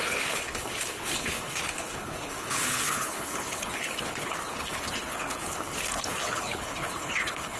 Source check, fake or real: fake